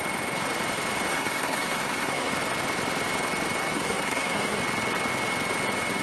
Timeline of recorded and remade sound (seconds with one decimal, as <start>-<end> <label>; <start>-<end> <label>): 0.0-1.1 recorded; 1.1-2.3 remade; 2.3-3.6 recorded; 3.6-4.6 remade; 4.6-6.0 recorded